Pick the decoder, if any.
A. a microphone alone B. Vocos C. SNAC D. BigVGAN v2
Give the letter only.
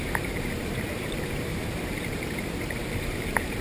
D